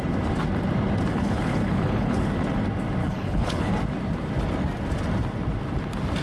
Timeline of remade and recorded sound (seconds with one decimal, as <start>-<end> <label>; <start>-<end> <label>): 0.0-1.1 recorded; 1.1-2.3 remade; 2.3-3.0 recorded; 3.0-3.7 remade; 3.7-6.2 recorded